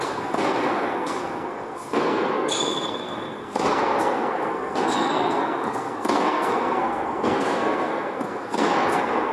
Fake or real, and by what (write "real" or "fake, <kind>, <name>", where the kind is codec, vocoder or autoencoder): fake, codec, SNAC